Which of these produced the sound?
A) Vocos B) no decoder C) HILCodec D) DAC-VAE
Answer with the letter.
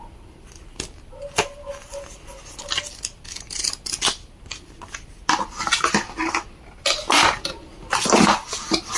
B